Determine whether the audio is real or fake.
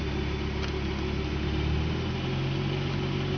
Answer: real